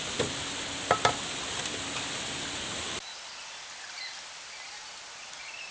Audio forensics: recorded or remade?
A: recorded